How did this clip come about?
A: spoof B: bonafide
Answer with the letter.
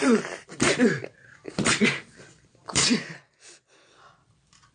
A